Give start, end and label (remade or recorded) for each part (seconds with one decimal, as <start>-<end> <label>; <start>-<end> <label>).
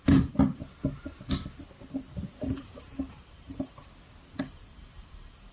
0.0-0.5 remade; 0.5-2.3 recorded; 2.3-3.8 remade; 3.8-4.4 recorded; 4.4-5.5 remade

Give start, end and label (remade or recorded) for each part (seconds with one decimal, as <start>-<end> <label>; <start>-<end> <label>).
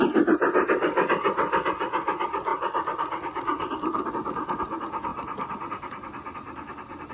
0.0-7.1 recorded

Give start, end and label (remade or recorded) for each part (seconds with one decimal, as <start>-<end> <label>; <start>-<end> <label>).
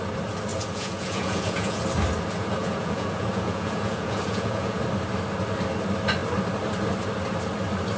0.0-0.5 recorded; 0.5-1.8 remade; 1.8-2.6 recorded; 2.6-4.8 remade; 4.8-8.0 recorded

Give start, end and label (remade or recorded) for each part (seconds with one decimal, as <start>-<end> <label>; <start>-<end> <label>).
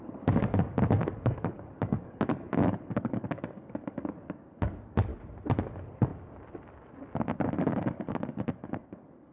0.0-5.1 remade; 5.1-5.6 recorded; 5.6-6.1 remade; 6.1-7.6 recorded; 7.6-9.3 remade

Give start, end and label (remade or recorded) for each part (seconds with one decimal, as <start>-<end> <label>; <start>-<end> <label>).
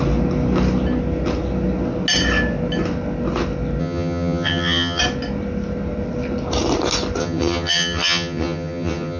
0.0-3.8 recorded; 3.8-5.0 remade; 5.0-7.2 recorded; 7.2-9.2 remade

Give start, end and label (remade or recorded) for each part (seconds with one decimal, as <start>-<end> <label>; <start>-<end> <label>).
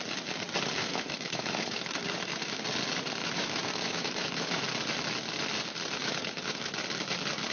0.0-0.8 recorded; 0.8-2.6 remade; 2.6-3.2 recorded; 3.2-4.6 remade; 4.6-6.0 recorded; 6.0-6.7 remade; 6.7-7.5 recorded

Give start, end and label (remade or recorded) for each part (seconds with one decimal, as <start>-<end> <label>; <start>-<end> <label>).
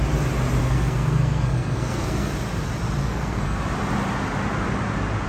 0.0-0.6 recorded; 0.6-2.3 remade; 2.3-3.0 recorded; 3.0-3.6 remade; 3.6-5.3 recorded